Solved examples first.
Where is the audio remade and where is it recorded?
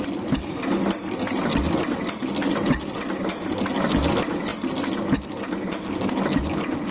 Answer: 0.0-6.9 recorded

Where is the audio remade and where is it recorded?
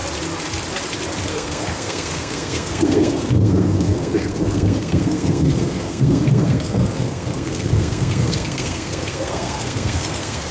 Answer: 0.0-1.3 recorded; 1.3-10.5 remade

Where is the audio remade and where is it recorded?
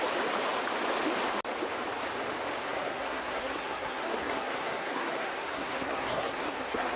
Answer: 0.0-2.6 recorded; 2.6-7.0 remade